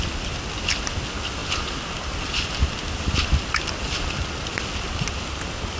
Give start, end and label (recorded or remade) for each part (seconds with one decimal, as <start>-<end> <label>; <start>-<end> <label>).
0.0-5.8 recorded